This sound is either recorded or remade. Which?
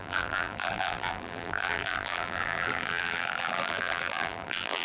remade